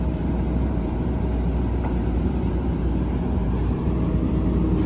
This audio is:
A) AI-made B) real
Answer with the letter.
A